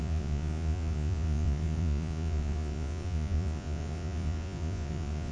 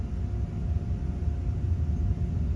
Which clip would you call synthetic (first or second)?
first